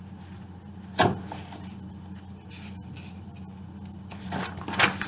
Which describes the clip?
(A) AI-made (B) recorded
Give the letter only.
B